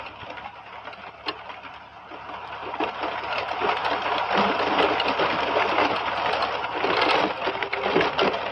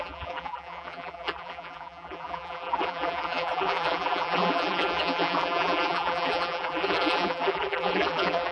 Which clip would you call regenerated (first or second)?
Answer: second